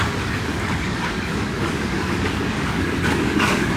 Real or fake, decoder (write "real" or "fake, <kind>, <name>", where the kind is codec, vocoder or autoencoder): fake, codec, DAC